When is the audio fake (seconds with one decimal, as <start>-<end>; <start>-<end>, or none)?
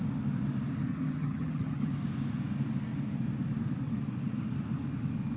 0.9-1.9